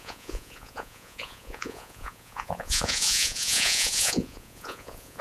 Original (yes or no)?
no